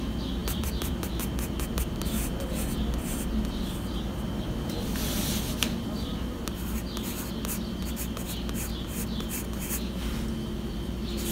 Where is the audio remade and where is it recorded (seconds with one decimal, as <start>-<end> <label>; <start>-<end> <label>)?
0.0-11.3 recorded